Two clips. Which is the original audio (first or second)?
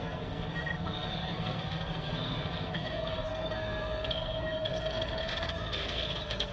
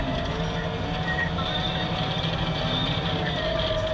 second